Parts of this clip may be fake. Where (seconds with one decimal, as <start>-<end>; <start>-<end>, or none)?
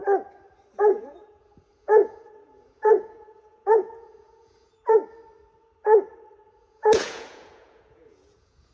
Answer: 0.8-5.0; 6.6-8.7